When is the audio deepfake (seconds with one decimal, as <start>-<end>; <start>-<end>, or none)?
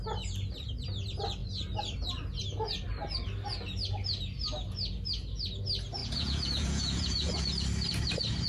6.0-7.5